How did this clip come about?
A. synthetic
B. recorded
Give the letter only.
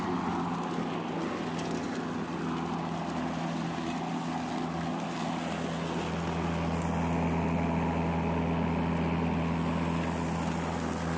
B